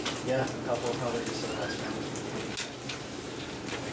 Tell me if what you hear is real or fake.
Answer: real